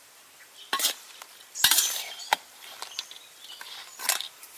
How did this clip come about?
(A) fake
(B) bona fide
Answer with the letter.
A